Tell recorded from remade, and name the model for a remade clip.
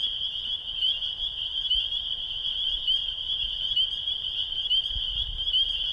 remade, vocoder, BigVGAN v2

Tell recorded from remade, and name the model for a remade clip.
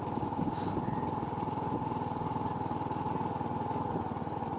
recorded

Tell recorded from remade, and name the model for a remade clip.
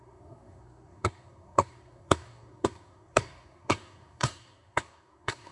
remade, codec, SNAC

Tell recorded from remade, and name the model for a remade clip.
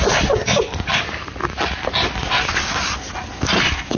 recorded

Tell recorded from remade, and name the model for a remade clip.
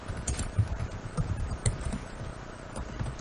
remade, vocoder, BigVGAN v2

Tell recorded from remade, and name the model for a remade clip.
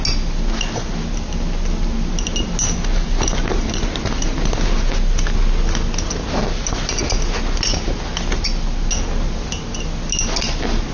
recorded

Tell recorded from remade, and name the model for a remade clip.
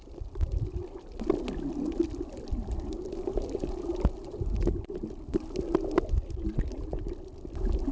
recorded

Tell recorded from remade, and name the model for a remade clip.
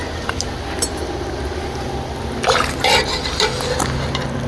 recorded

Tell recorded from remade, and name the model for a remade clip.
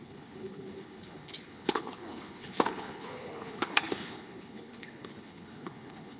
remade, codec, HILCodec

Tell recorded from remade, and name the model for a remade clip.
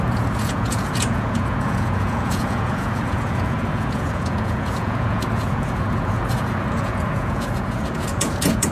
remade, vocoder, Vocos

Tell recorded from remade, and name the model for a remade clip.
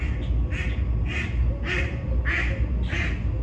recorded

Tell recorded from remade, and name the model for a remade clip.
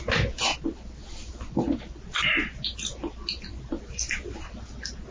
recorded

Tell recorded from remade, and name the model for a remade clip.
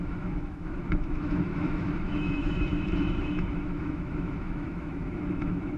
remade, autoencoder, DAC-VAE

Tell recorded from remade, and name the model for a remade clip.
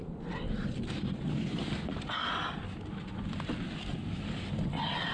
recorded